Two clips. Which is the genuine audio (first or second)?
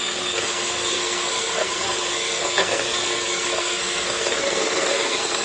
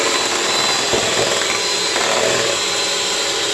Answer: second